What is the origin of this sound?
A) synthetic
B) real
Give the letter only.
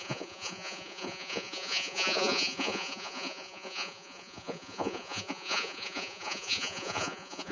A